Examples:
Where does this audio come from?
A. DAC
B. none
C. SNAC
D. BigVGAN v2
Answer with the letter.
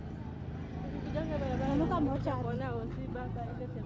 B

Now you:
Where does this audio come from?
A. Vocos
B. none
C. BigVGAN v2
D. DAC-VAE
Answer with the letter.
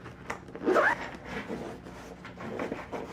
B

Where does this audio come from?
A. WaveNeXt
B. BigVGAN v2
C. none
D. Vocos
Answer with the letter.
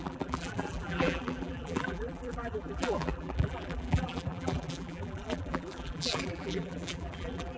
B